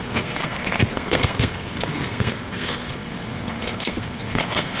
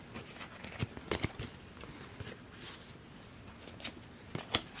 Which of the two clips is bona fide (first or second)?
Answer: second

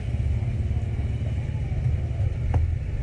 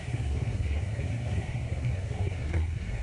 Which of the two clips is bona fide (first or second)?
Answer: first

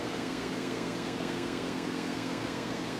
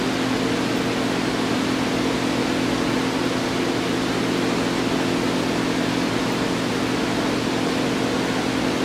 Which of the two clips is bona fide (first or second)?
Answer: second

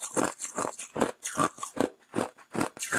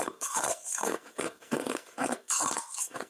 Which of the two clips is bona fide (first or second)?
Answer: first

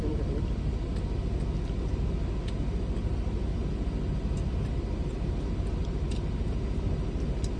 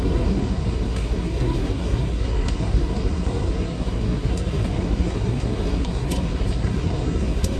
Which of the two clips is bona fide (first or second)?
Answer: first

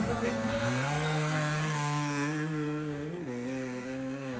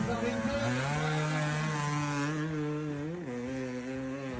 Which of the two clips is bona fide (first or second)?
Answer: second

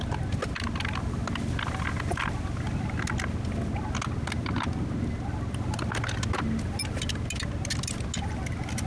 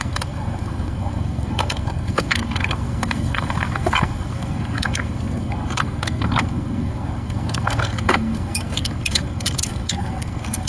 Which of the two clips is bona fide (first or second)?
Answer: first